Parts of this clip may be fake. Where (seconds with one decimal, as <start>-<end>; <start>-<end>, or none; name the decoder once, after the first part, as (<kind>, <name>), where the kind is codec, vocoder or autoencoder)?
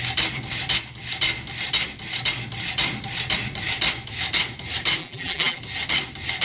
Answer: 5.0-5.6 (vocoder, BigVGAN v2)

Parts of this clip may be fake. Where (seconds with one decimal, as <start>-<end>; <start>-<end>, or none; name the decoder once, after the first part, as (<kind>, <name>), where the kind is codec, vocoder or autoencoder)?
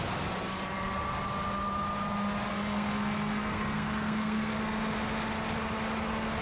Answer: 2.5-4.6 (codec, SNAC)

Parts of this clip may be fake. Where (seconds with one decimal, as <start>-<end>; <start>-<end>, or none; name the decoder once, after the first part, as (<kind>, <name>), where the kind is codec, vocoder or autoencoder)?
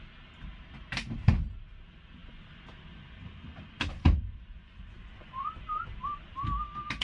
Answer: 4.6-5.6 (vocoder, Vocos)